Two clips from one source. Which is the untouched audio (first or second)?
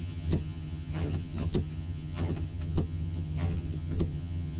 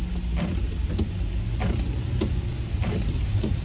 second